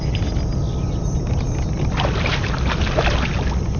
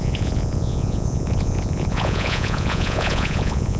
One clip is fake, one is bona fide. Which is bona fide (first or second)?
first